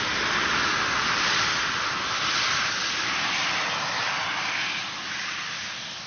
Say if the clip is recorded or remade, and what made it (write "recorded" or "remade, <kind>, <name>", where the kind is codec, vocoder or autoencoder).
recorded